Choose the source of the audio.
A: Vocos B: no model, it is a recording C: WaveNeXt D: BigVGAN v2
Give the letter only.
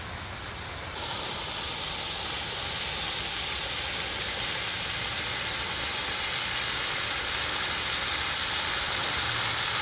B